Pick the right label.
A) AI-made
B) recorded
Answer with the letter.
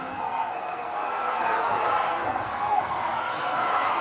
A